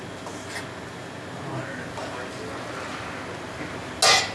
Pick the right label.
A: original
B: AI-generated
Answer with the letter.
A